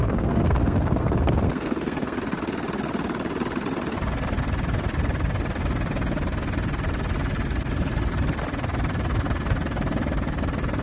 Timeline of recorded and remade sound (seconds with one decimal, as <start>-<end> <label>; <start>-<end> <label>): 0.0-2.2 remade; 2.2-10.8 recorded